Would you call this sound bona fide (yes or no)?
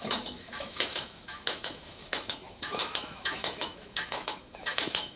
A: no